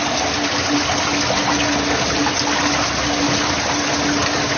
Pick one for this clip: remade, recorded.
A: recorded